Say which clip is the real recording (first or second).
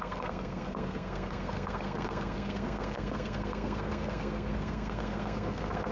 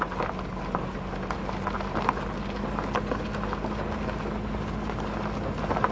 second